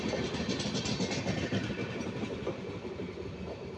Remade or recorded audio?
recorded